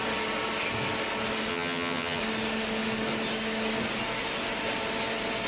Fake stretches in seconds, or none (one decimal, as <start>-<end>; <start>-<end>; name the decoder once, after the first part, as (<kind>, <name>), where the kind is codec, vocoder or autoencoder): 1.5-2.2 (vocoder, HiFi-GAN)